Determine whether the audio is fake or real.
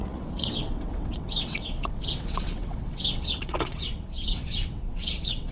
fake